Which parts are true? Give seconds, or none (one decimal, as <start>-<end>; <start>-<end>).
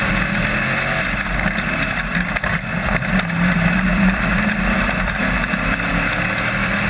0.0-3.9; 5.5-6.9